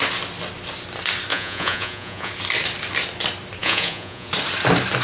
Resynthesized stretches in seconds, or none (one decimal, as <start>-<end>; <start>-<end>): 1.3-2.3; 3.6-4.3